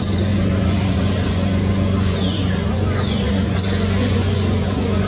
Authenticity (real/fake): fake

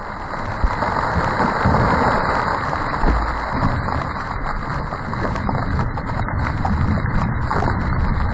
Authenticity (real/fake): real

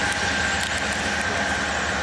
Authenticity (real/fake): real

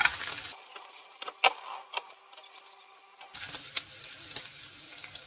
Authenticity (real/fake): real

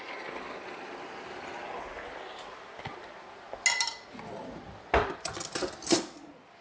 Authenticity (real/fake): real